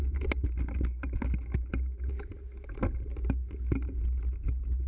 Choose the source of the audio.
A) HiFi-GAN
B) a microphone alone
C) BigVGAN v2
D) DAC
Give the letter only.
B